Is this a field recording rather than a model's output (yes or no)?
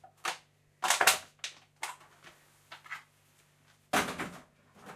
yes